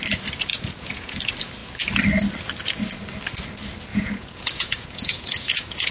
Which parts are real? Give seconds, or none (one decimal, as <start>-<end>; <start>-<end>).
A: 0.0-0.5; 1.2-3.9